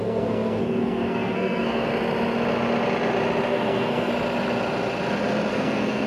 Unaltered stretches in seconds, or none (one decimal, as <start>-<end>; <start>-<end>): 1.9-3.5; 4.1-5.5